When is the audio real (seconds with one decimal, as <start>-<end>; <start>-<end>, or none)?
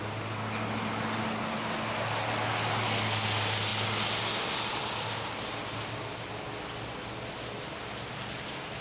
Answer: 0.0-8.8